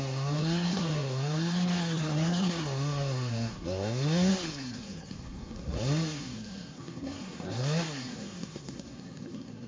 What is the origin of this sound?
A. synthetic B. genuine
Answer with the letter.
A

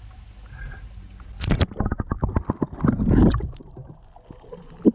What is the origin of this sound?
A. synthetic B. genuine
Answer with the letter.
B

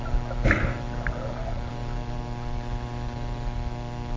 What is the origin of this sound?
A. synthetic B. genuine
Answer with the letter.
B